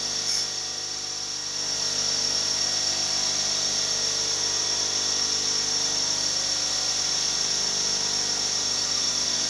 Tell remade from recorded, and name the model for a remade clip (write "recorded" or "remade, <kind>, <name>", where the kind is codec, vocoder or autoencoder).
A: recorded